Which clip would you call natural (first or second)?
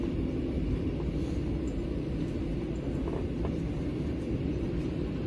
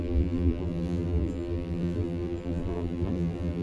first